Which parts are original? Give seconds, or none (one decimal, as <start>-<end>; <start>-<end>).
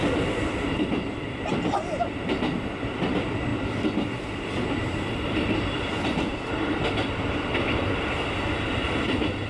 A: 0.0-9.5